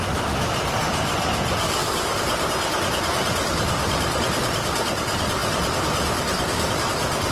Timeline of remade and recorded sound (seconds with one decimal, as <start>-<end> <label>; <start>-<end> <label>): 0.0-7.3 recorded